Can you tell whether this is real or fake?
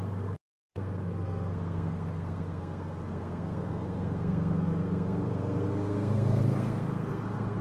fake